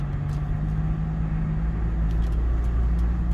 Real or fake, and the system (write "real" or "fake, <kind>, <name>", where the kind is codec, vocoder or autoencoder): real